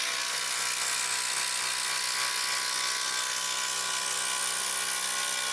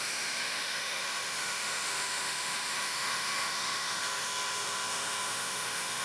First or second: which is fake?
second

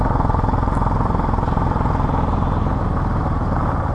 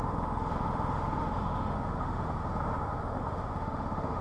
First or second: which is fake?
second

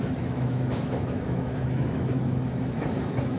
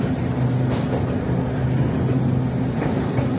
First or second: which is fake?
first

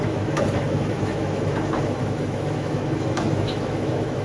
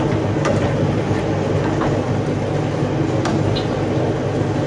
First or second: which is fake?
first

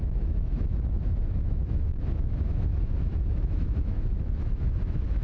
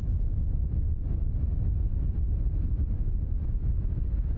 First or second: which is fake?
first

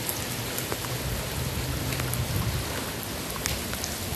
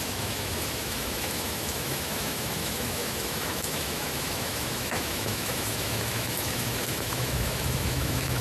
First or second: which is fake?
second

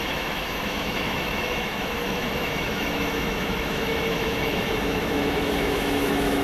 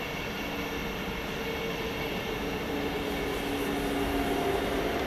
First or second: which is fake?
first